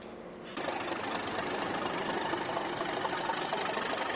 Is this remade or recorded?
recorded